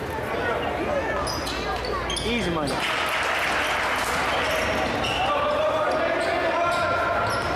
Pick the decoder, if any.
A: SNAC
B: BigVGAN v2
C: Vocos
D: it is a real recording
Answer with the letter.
D